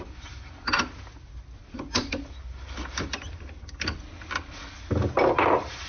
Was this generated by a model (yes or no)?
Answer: no